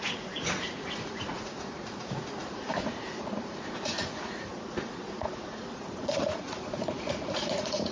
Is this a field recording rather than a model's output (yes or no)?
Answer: no